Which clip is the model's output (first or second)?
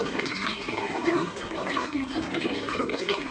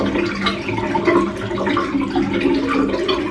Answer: first